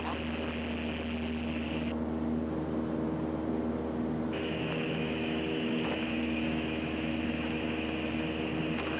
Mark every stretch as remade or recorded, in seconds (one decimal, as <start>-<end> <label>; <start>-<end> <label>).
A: 0.0-4.3 recorded; 4.3-7.6 remade; 7.6-9.0 recorded